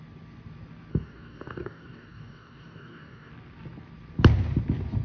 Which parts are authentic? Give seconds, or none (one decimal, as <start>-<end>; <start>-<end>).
0.0-0.9; 3.3-5.0